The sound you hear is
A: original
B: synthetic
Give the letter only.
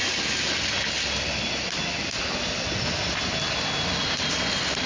A